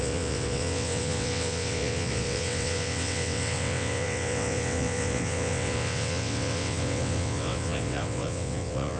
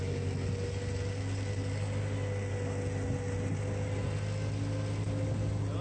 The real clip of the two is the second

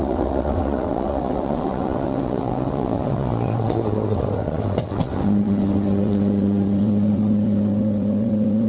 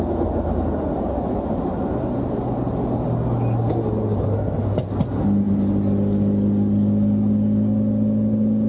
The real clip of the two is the second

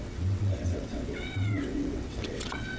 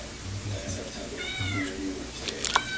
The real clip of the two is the second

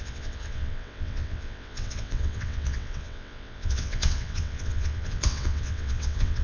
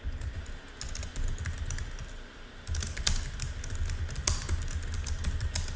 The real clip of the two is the second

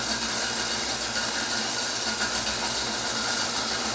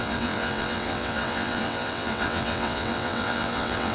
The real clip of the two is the first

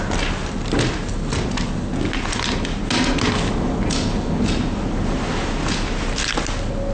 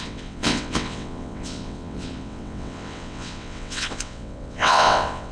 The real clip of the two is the first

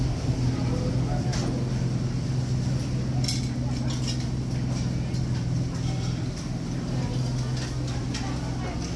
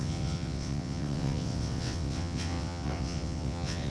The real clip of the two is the first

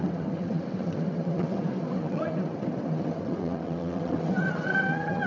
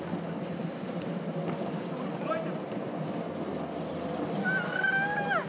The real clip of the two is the second